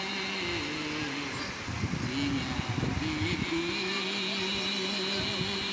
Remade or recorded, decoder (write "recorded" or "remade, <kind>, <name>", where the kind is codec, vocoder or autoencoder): recorded